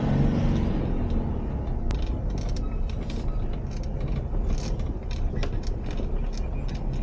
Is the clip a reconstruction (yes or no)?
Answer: no